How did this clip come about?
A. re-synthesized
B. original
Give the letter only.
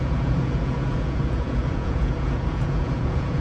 A